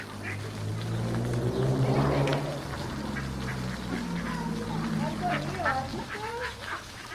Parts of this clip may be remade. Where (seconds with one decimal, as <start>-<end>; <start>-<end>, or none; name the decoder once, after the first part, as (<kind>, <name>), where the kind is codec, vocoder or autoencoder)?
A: 5.9-7.1 (autoencoder, DAC-VAE)